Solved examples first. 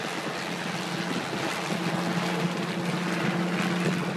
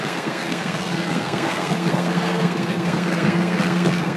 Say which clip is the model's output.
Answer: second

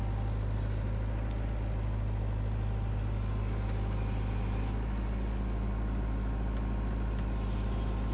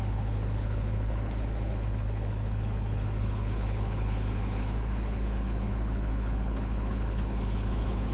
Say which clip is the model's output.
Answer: second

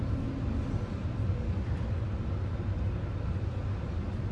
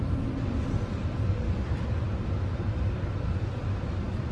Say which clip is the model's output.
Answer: second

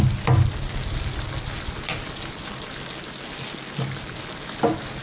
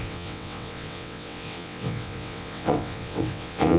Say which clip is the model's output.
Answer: second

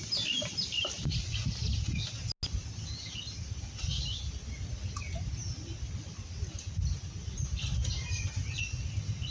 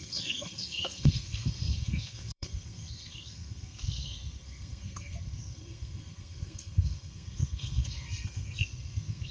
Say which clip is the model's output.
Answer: second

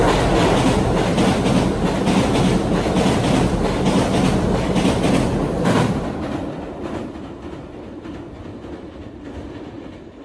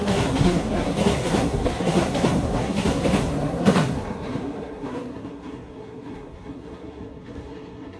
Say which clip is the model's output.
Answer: second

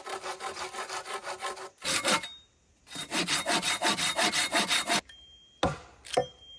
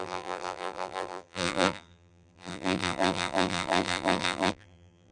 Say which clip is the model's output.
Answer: second